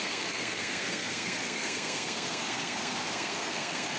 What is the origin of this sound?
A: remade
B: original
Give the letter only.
A